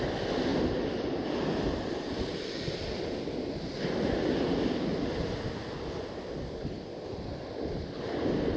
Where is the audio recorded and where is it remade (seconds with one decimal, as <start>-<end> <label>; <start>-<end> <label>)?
0.0-8.6 recorded